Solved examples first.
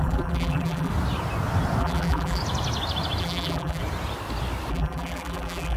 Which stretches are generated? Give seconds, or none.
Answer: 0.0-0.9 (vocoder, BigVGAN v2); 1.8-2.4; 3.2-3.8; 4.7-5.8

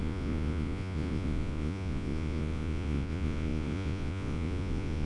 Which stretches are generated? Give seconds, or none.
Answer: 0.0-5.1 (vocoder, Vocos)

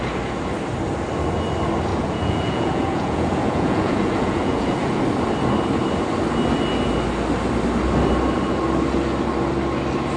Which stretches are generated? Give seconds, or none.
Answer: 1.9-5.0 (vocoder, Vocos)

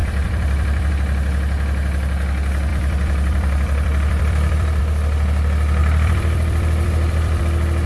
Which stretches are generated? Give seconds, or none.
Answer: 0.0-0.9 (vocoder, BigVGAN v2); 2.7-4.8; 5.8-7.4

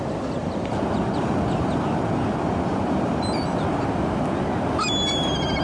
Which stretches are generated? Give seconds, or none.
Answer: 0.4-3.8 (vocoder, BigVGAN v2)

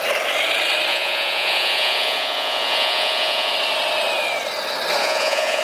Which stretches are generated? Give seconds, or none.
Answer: 0.9-3.5 (vocoder, Vocos); 5.0-5.6